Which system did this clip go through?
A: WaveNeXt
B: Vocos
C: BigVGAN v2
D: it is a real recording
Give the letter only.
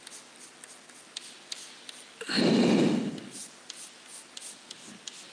D